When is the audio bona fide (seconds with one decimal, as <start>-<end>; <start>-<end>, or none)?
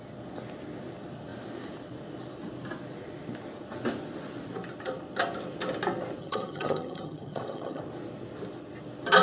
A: 0.0-6.2; 7.8-9.2